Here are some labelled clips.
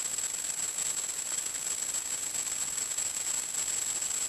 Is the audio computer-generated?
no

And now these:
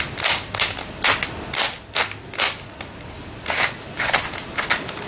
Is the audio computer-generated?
no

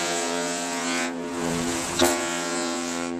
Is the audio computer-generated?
yes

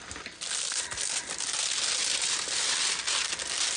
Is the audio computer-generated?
no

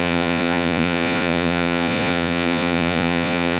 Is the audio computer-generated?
yes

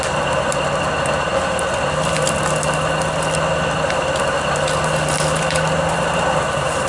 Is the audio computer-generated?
no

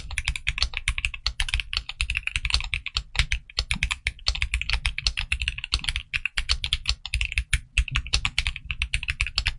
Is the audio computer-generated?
no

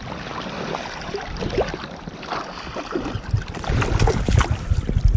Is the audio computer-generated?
no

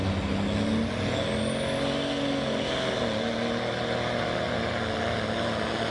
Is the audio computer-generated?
no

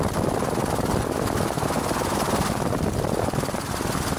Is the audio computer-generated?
no